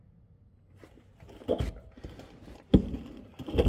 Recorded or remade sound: recorded